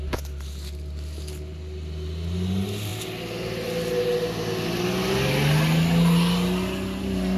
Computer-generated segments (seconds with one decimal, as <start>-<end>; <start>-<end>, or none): none